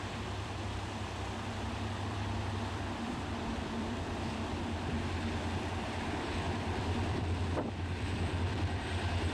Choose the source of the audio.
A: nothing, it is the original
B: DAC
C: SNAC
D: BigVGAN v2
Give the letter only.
D